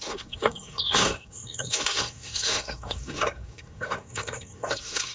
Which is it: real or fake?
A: fake